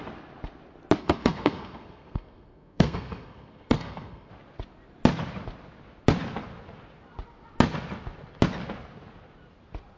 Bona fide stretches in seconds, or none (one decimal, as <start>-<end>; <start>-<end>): 0.0-1.0; 4.3-10.0